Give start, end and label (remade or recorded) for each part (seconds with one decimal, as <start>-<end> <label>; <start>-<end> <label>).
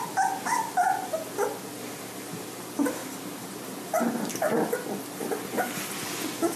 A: 0.0-6.6 recorded